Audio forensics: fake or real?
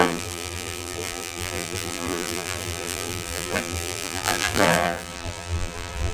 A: fake